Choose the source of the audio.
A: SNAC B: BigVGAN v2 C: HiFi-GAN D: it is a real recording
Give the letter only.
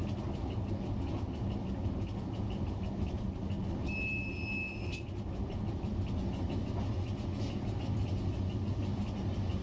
D